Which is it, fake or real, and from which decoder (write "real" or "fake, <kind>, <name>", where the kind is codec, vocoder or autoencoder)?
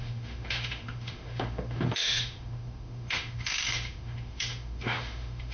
fake, autoencoder, DAC-VAE